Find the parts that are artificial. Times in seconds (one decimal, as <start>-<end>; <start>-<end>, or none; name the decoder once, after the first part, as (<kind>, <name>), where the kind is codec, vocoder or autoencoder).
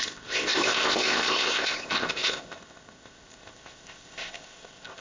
0.0-5.0 (codec, ZipCodec)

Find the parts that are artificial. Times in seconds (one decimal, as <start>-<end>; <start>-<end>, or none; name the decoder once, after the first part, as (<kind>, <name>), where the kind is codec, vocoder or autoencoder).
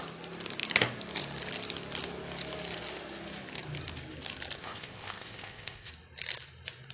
4.6-5.9 (codec, ZipCodec)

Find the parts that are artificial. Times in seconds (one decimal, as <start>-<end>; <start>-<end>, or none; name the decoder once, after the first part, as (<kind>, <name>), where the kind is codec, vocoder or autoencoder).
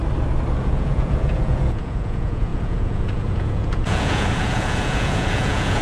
0.6-5.8 (vocoder, Vocos)